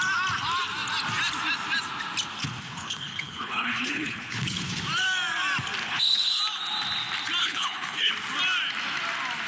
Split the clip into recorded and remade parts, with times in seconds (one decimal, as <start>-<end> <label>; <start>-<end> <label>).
0.0-2.4 recorded; 2.4-4.8 remade; 4.8-5.8 recorded; 5.8-6.4 remade; 6.4-7.4 recorded; 7.4-8.1 remade; 8.1-9.5 recorded

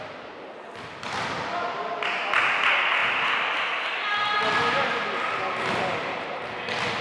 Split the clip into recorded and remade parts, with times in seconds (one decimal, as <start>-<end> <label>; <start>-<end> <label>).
0.0-7.0 recorded

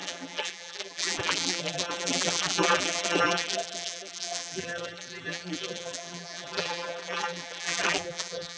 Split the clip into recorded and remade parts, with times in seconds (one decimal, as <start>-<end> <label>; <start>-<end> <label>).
0.0-8.6 remade

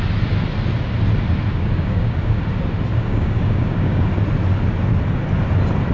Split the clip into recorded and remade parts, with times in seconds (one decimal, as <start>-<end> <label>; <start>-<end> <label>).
0.0-1.5 recorded; 1.5-2.4 remade; 2.4-2.9 recorded; 2.9-4.0 remade; 4.0-5.9 recorded

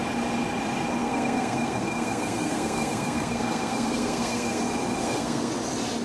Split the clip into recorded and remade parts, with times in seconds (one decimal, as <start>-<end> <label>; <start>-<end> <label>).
0.0-1.0 recorded; 1.0-4.6 remade; 4.6-5.0 recorded; 5.0-5.5 remade; 5.5-6.0 recorded